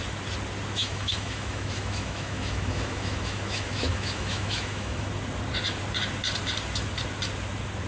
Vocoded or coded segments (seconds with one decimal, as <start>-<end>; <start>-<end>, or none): 0.8-5.1